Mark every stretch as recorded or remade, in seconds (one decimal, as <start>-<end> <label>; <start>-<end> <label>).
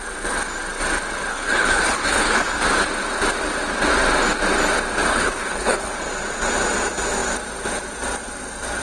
0.0-1.3 recorded; 1.3-2.5 remade; 2.5-5.1 recorded; 5.1-6.0 remade; 6.0-8.8 recorded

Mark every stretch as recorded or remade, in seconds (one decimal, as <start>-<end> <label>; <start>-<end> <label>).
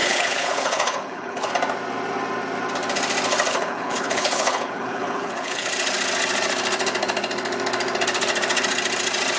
0.0-1.5 remade; 1.5-3.5 recorded; 3.5-5.7 remade; 5.7-9.4 recorded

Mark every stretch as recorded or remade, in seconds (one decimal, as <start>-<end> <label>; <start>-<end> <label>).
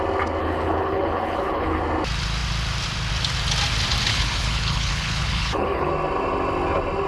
0.0-0.4 recorded; 0.4-1.8 remade; 1.8-4.1 recorded; 4.1-5.9 remade; 5.9-7.1 recorded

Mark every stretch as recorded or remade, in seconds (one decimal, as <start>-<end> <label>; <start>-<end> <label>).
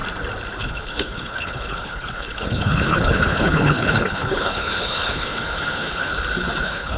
0.0-0.6 recorded; 0.6-6.1 remade; 6.1-6.6 recorded; 6.6-7.0 remade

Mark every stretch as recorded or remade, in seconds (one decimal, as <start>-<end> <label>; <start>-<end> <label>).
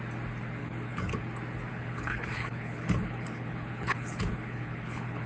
0.0-0.6 recorded; 0.6-1.2 remade; 1.2-1.7 recorded; 1.7-5.3 remade